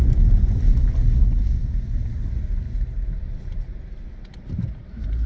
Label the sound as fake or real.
real